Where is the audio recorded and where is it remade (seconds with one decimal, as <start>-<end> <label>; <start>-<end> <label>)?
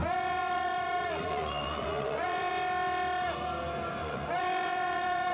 0.0-2.5 remade; 2.5-4.0 recorded; 4.0-5.3 remade